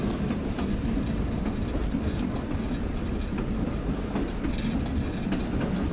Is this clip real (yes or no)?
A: yes